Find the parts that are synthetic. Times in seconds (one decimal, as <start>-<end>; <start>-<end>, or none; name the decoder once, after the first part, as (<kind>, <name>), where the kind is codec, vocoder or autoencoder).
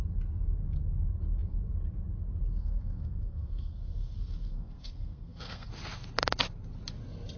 2.6-5.7 (codec, SNAC)